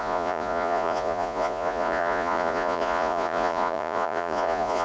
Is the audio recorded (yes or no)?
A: no